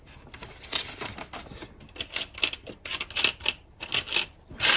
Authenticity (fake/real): real